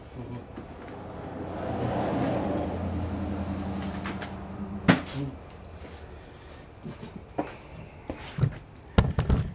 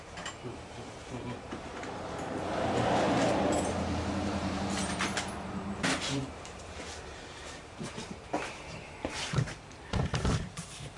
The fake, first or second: second